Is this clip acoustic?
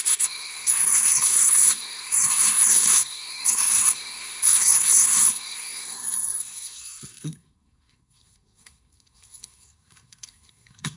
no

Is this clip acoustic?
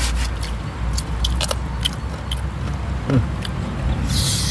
yes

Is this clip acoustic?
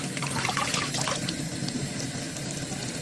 yes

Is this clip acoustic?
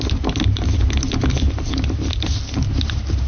yes